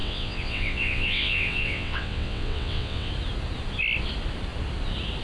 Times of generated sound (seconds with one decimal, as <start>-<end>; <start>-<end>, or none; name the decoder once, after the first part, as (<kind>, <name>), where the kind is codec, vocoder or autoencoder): 0.0-3.1 (vocoder, WaveNeXt)